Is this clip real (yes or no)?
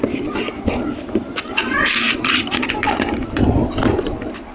yes